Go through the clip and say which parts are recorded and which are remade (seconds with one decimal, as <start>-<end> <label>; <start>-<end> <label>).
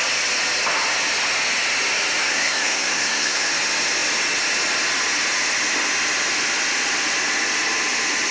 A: 0.0-2.2 recorded; 2.2-3.5 remade; 3.5-8.3 recorded